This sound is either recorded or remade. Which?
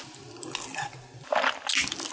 recorded